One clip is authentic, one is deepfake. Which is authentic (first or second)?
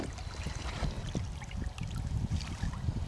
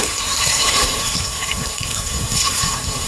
first